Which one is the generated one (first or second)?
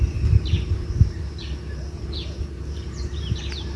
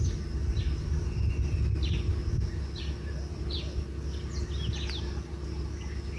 first